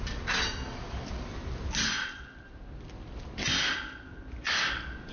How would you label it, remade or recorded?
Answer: recorded